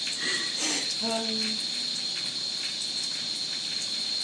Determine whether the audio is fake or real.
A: real